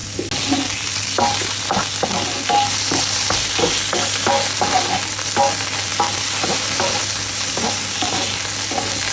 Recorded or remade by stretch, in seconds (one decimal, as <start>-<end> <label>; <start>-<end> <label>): 0.0-9.1 recorded